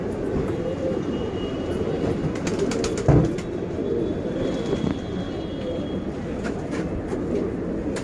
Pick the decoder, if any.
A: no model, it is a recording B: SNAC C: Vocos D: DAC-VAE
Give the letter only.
A